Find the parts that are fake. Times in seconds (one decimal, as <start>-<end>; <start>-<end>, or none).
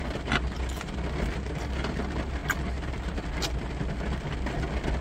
none